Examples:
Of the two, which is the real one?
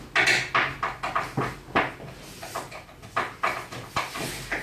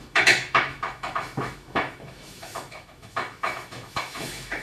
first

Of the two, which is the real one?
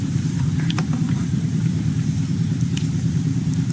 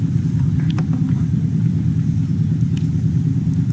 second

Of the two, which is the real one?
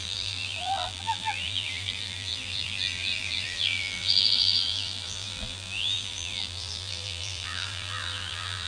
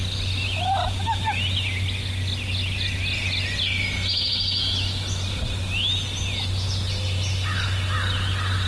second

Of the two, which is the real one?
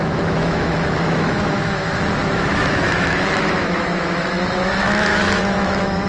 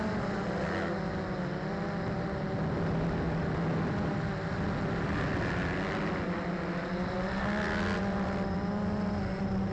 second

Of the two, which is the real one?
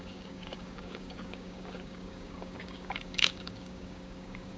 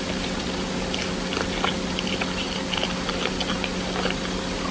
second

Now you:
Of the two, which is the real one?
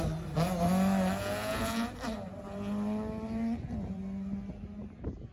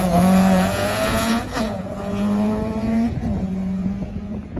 first